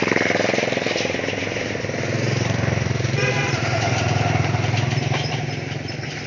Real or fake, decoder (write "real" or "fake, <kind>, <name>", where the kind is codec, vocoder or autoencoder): fake, vocoder, BigVGAN v2